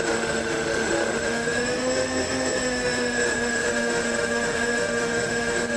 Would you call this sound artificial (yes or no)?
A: yes